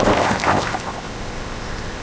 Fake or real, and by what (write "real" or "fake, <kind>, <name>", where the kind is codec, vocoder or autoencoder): fake, codec, ZipCodec